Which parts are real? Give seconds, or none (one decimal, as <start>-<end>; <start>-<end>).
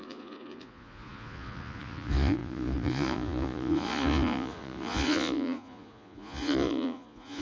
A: none